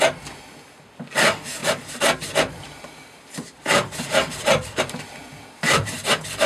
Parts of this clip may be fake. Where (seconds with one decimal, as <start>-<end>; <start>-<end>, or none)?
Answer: 1.6-5.5